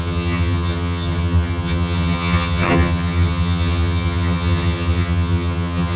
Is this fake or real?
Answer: fake